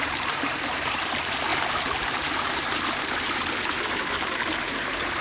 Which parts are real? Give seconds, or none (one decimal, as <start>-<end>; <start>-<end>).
none